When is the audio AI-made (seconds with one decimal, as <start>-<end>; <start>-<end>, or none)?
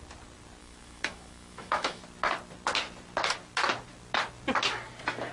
0.6-2.0